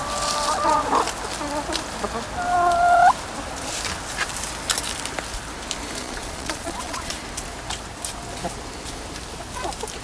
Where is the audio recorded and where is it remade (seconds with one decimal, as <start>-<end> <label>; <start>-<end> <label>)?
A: 0.0-6.0 recorded; 6.0-7.1 remade; 7.1-10.0 recorded

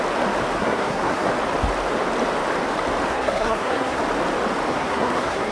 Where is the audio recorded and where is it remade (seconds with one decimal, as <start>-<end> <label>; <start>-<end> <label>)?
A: 0.0-0.6 recorded; 0.6-1.3 remade; 1.3-3.1 recorded; 3.1-4.0 remade; 4.0-4.7 recorded; 4.7-5.5 remade

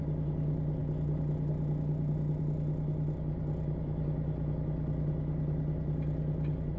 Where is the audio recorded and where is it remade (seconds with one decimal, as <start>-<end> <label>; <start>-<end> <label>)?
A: 0.0-6.8 recorded

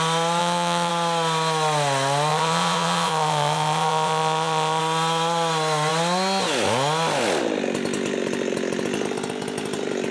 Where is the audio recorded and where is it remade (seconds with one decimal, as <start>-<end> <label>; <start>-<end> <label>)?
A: 0.0-0.4 recorded; 0.4-0.9 remade; 0.9-2.3 recorded; 2.3-4.8 remade; 4.8-10.1 recorded

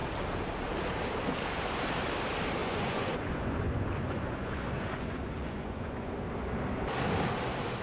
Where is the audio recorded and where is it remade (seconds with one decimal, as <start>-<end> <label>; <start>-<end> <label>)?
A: 0.0-2.6 recorded; 2.6-6.1 remade; 6.1-7.8 recorded